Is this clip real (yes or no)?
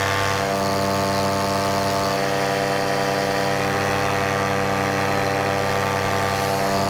yes